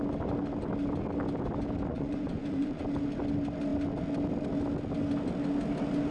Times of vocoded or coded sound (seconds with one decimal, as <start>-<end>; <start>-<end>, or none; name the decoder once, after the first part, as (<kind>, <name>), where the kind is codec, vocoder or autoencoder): 1.9-2.8 (vocoder, Vocos)